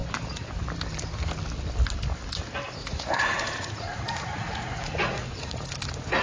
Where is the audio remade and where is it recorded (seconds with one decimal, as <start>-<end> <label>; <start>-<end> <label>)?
0.0-2.8 recorded; 2.8-5.7 remade; 5.7-6.2 recorded